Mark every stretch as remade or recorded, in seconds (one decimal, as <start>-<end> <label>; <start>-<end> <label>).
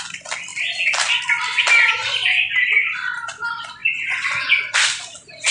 0.0-5.5 recorded